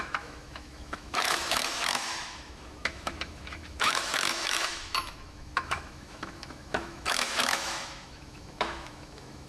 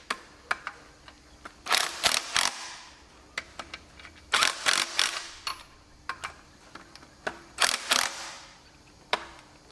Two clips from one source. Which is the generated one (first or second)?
first